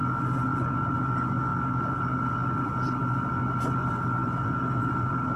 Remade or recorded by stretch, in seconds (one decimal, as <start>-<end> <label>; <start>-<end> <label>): 0.0-5.4 recorded